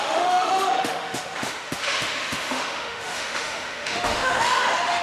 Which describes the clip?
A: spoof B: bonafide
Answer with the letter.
A